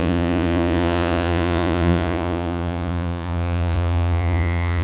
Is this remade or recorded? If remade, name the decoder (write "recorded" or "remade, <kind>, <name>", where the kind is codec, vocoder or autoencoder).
remade, vocoder, Vocos